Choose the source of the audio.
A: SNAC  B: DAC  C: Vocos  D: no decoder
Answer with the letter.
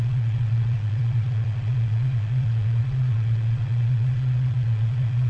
C